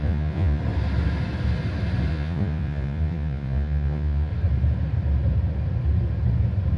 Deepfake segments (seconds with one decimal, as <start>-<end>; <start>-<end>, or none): 0.0-0.6; 2.1-4.3